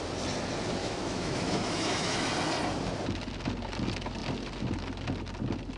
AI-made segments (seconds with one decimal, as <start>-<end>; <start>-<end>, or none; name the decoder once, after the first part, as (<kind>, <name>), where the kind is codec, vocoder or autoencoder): 0.8-2.3 (autoencoder, DAC-VAE)